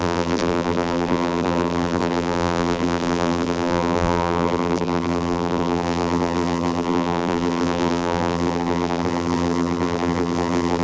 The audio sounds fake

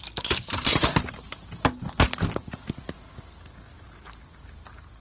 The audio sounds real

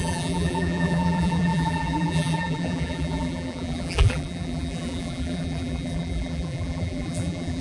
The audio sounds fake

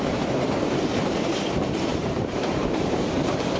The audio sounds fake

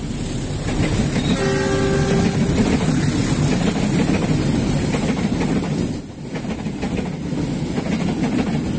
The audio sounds real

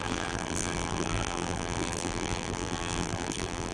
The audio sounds fake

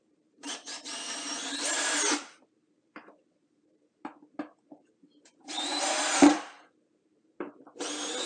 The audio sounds fake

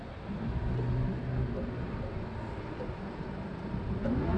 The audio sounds real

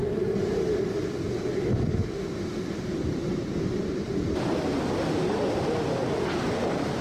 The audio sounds real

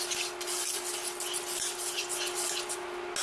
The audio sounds real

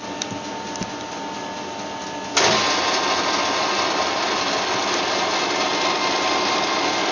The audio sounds real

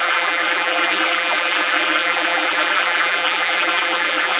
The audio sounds fake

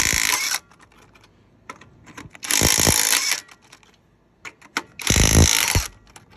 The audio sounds real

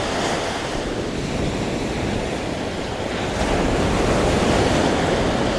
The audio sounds real